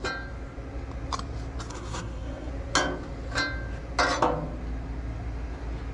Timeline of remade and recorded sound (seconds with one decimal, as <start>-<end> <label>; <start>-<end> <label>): 0.0-1.7 recorded; 1.7-2.5 remade; 2.5-5.9 recorded